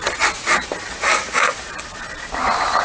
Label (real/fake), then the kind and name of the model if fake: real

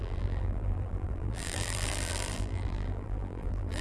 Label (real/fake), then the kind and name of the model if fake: fake, vocoder, BigVGAN v2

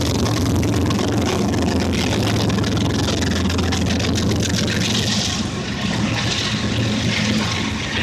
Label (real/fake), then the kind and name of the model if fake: real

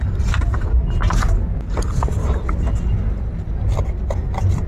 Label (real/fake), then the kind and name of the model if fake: real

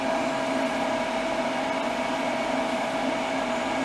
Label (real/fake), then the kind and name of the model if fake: real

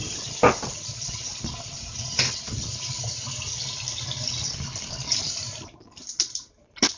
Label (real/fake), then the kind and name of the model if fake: fake, vocoder, BigVGAN v2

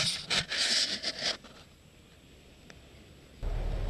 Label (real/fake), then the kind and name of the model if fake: real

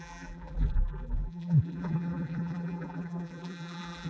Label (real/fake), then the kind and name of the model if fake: fake, vocoder, BigVGAN v2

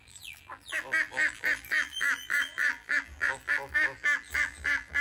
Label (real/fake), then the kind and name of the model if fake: fake, vocoder, BigVGAN v2